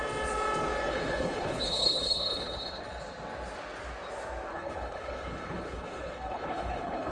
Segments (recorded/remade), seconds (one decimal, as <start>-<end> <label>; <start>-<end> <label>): 0.0-0.9 recorded; 0.9-2.8 remade; 2.8-4.5 recorded; 4.5-7.1 remade